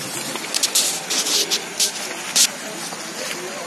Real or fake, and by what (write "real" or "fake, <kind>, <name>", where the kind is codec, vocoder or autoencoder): real